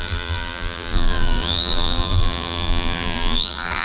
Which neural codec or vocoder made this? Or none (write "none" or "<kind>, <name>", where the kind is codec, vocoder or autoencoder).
vocoder, BigVGAN v2